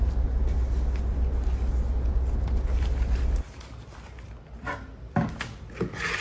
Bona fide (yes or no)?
yes